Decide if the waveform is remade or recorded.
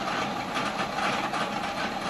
recorded